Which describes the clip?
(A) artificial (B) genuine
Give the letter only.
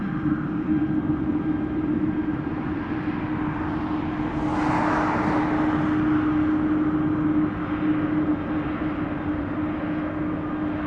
B